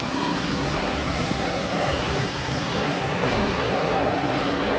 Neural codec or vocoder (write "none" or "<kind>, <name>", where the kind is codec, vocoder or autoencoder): codec, SNAC